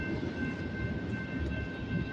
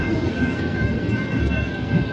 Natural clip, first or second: first